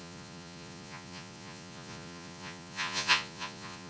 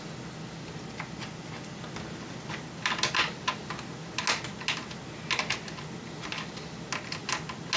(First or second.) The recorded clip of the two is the second